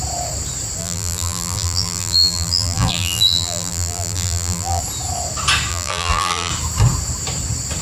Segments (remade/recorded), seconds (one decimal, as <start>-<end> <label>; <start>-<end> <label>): 0.0-0.8 recorded; 0.8-4.8 remade; 4.8-5.7 recorded; 5.7-6.5 remade; 6.5-7.8 recorded